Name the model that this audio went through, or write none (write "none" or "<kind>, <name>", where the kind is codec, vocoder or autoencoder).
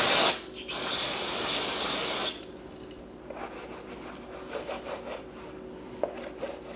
none